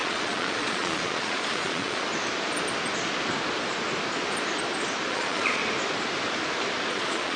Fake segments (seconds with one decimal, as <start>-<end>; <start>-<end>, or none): 0.0-2.1; 5.1-5.6; 6.9-7.4